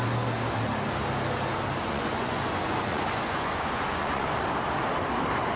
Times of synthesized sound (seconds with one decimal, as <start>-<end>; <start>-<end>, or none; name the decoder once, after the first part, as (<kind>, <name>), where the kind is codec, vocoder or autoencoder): 1.8-4.4 (vocoder, Vocos)